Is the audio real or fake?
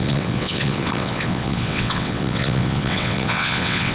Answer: fake